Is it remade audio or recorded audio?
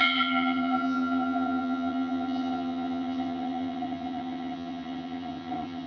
remade